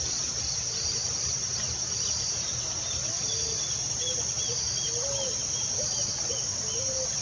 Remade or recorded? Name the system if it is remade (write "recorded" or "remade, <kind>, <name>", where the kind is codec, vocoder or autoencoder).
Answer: recorded